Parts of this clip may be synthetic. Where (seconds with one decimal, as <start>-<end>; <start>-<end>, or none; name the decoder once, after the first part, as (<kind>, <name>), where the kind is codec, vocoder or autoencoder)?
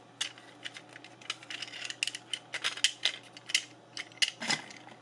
none